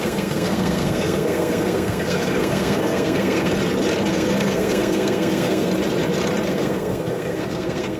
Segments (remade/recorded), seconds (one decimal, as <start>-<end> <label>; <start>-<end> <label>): 0.0-3.5 remade; 3.5-4.1 recorded; 4.1-5.7 remade; 5.7-6.5 recorded; 6.5-8.0 remade